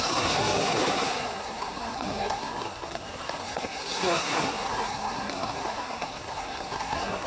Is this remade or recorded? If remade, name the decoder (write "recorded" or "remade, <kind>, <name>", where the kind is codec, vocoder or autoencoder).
remade, codec, SNAC